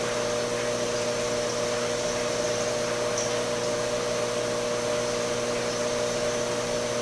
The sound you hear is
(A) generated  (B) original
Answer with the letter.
B